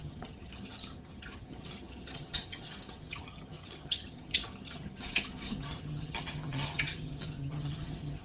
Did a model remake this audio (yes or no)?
yes